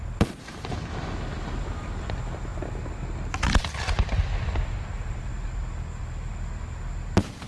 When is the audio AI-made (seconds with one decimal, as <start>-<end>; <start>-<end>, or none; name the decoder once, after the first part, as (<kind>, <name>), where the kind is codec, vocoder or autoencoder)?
none